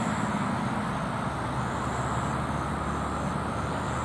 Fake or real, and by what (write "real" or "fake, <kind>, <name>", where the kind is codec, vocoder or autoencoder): real